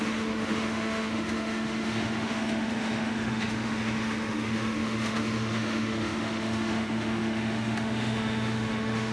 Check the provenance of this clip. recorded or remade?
remade